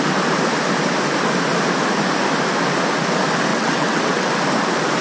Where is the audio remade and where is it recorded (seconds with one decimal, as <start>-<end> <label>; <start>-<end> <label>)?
0.0-3.5 recorded; 3.5-4.3 remade; 4.3-5.0 recorded